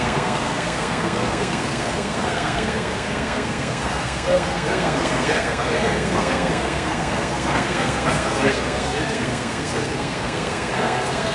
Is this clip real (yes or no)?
no